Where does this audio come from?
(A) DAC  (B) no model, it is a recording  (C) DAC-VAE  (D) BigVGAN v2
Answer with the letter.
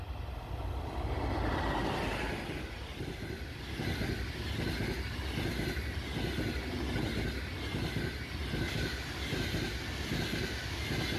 B